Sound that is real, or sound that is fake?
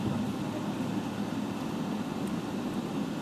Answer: real